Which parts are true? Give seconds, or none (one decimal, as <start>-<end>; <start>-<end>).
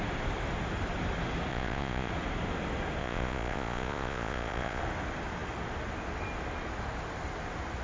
0.0-1.5; 2.1-3.0; 4.8-7.8